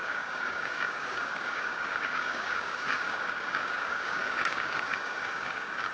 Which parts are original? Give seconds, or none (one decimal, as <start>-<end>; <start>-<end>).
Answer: none